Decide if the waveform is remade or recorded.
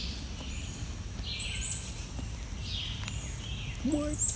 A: recorded